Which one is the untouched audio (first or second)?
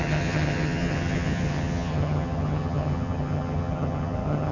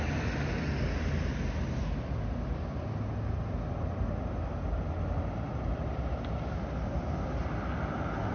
second